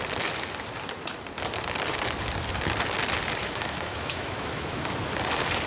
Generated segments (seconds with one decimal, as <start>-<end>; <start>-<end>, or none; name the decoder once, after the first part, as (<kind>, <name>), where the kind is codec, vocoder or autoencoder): 3.4-4.9 (autoencoder, DAC-VAE)